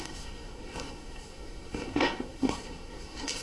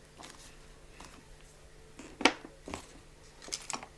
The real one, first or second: second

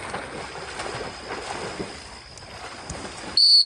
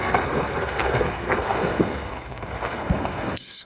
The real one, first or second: first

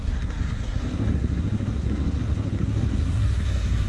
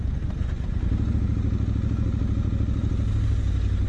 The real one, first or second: second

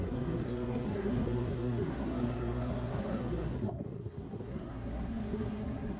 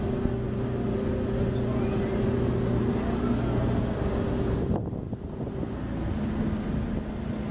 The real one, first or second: second